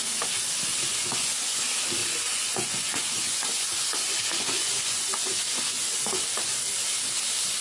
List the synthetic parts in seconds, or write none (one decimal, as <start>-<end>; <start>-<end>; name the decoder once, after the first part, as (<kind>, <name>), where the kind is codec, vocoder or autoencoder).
0.9-1.6 (vocoder, Vocos); 2.0-6.6